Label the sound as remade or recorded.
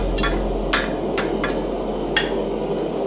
recorded